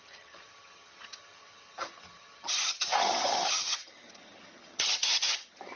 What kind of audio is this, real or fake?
fake